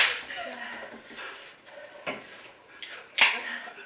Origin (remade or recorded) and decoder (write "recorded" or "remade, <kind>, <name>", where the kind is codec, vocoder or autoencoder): recorded